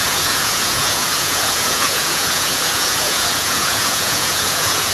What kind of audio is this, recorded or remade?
remade